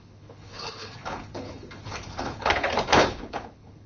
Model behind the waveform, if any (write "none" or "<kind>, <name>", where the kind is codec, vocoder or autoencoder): codec, HILCodec